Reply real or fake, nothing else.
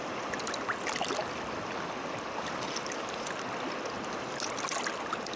real